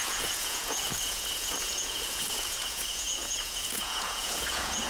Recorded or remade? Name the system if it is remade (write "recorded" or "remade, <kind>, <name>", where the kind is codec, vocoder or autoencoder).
remade, vocoder, Vocos